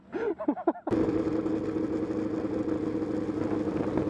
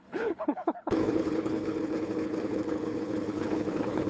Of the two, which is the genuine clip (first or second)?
first